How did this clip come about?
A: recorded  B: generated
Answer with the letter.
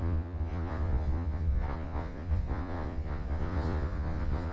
B